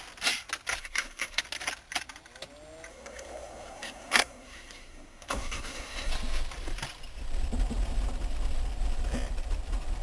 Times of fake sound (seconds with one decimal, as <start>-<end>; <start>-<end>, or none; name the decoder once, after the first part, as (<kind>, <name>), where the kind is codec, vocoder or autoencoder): 0.8-1.4 (codec, SNAC); 2.9-6.1